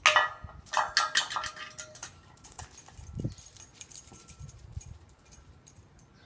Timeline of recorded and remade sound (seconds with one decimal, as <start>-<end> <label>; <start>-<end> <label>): 0.0-2.0 recorded; 2.0-2.6 remade; 2.6-3.7 recorded; 3.7-6.3 remade